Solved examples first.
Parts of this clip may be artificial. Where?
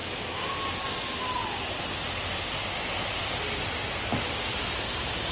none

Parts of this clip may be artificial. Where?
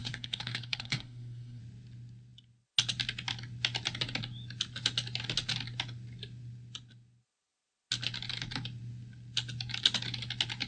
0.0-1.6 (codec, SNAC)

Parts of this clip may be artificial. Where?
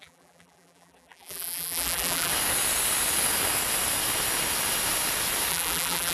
0.0-2.3 (vocoder, BigVGAN v2); 5.5-6.1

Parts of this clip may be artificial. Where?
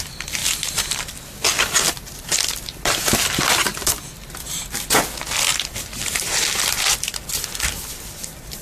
none